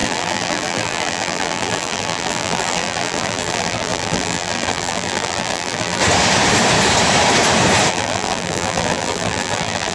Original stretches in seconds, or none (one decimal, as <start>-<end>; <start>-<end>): 6.0-7.9